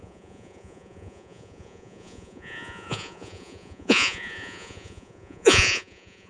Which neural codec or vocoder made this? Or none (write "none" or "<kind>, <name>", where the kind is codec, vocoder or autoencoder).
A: vocoder, Vocos